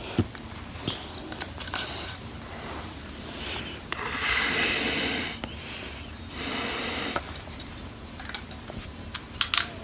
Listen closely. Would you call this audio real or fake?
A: real